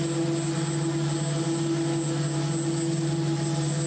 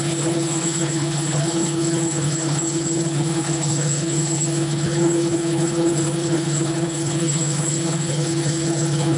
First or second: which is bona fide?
first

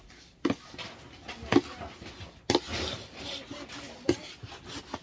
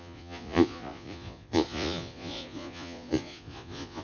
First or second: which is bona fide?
first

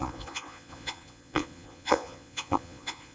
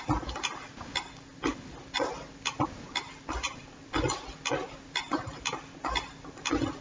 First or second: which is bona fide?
second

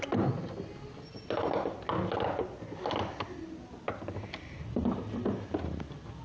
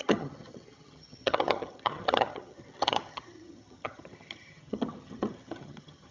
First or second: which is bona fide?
first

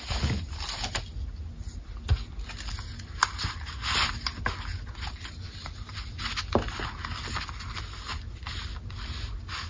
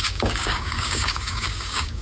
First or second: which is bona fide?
first